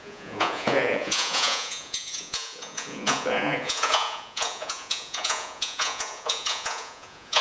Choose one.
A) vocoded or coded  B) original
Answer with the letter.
A